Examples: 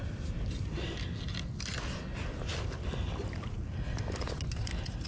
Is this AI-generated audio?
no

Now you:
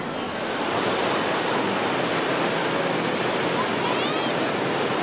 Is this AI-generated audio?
no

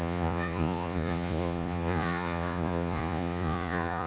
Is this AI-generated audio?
yes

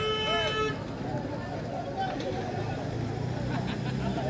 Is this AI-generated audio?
no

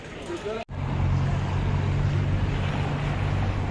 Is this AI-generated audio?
no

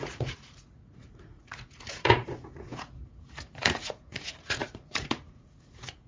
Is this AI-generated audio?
yes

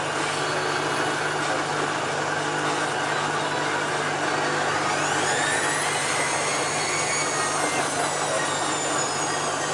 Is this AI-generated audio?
no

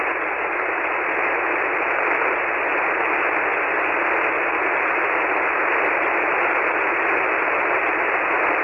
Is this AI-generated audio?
no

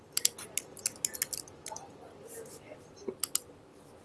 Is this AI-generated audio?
no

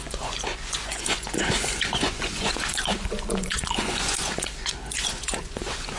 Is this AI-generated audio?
yes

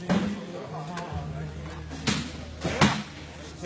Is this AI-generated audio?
no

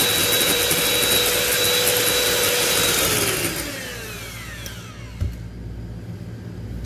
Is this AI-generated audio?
no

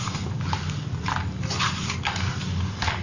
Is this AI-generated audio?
no